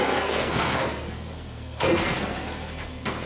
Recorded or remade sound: remade